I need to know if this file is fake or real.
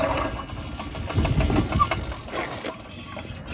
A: real